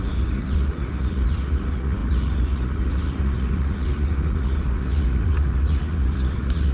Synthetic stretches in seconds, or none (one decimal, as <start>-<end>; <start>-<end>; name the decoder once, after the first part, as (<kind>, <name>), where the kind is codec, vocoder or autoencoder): 0.0-6.7 (vocoder, Vocos)